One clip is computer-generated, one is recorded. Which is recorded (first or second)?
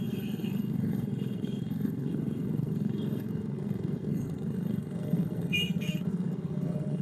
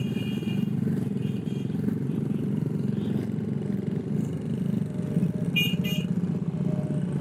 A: second